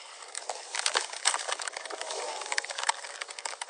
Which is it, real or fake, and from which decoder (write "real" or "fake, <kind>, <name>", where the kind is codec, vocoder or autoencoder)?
fake, codec, DAC